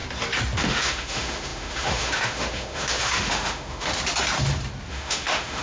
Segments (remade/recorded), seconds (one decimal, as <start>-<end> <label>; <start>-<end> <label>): 0.0-0.6 recorded; 0.6-3.9 remade; 3.9-4.9 recorded; 4.9-5.6 remade